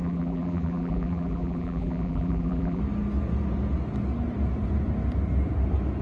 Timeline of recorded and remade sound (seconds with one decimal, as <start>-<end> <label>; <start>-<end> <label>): 0.0-2.8 remade; 2.8-6.0 recorded